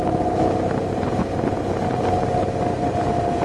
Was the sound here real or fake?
real